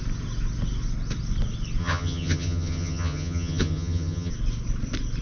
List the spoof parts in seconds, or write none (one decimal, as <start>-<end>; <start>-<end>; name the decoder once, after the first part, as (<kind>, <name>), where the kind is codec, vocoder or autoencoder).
1.8-4.3 (vocoder, HiFi-GAN)